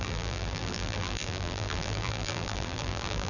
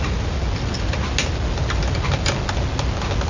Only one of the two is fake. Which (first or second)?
first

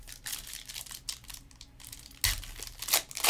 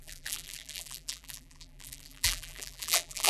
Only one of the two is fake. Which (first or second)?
second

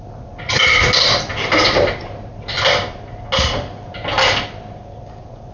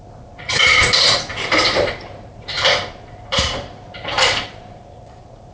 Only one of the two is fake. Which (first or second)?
second